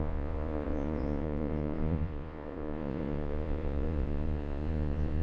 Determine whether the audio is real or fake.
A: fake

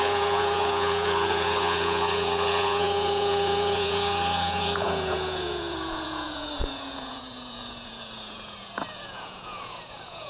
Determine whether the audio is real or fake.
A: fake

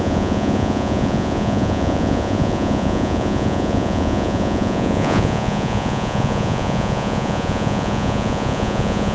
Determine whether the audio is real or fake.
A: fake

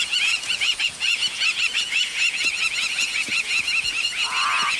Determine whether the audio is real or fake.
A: fake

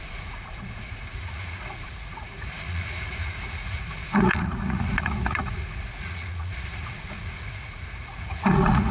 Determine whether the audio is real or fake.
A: fake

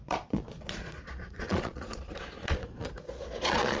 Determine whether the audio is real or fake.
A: fake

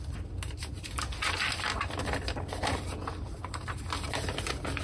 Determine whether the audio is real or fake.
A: real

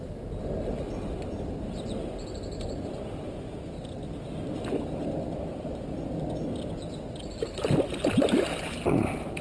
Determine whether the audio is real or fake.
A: real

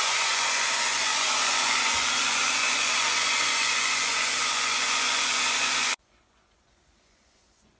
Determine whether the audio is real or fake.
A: fake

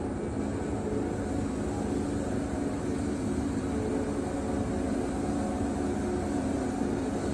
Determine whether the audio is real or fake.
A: real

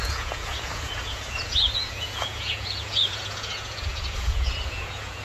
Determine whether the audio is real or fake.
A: fake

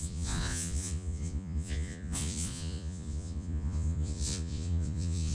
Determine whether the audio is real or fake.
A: fake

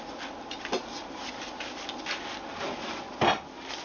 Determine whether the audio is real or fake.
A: real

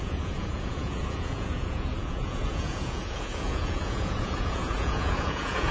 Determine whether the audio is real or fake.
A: fake